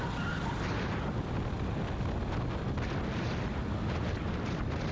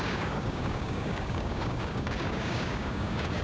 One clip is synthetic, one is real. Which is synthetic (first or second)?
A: second